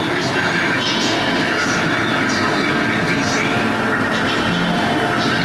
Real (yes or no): yes